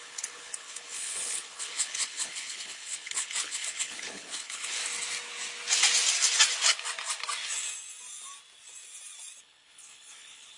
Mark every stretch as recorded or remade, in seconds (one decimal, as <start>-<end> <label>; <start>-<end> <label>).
0.0-4.8 remade; 4.8-9.4 recorded; 9.4-10.6 remade